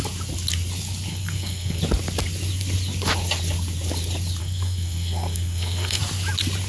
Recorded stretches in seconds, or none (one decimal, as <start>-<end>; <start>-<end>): 0.0-1.1; 1.8-4.4; 6.0-6.7